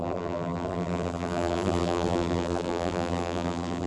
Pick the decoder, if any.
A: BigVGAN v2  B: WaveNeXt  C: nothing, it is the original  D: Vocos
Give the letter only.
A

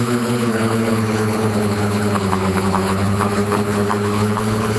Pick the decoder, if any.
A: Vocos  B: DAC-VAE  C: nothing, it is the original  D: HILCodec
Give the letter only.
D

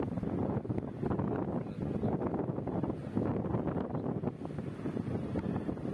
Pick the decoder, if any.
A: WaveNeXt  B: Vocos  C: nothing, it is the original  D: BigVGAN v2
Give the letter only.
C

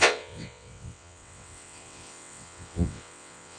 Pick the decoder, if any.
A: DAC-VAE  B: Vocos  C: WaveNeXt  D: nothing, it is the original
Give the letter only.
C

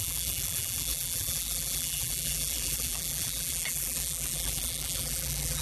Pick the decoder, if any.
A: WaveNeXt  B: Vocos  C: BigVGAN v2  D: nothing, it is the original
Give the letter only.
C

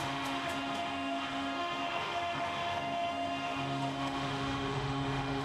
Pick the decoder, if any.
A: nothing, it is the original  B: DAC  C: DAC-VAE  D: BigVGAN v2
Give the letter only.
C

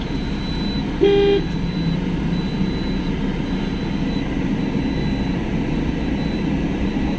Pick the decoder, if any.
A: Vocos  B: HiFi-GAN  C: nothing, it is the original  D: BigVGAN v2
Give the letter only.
C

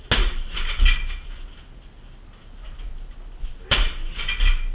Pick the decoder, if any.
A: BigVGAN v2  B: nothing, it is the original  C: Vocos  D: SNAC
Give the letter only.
B